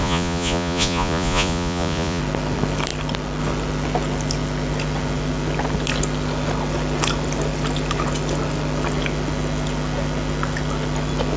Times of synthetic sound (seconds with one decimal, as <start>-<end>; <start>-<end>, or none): 0.0-2.2

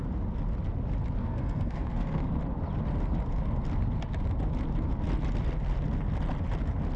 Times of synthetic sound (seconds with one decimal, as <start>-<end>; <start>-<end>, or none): 1.2-2.3

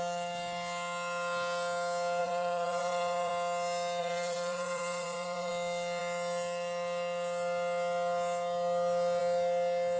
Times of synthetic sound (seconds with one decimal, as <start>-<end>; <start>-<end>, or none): 2.2-3.3; 4.0-5.5